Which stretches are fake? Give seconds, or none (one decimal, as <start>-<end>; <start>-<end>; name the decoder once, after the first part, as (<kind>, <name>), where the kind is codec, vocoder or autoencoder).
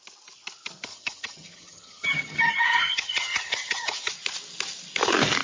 0.9-4.1 (vocoder, HiFi-GAN)